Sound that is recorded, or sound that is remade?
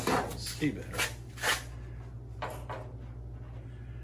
recorded